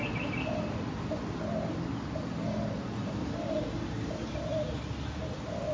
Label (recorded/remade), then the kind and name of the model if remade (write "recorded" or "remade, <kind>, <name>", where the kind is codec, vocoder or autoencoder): recorded